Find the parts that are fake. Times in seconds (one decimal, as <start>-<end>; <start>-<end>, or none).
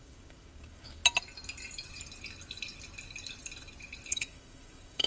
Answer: 0.0-1.0; 4.1-5.1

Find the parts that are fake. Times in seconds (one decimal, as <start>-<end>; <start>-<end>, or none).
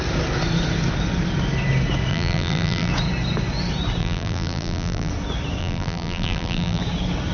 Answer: 2.1-2.9; 4.0-5.1; 5.6-6.8